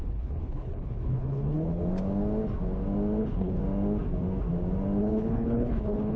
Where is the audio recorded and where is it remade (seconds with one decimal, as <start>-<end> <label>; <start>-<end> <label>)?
0.0-1.8 remade; 1.8-3.2 recorded; 3.2-3.6 remade; 3.6-5.0 recorded; 5.0-6.2 remade